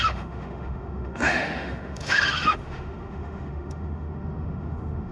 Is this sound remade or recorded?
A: remade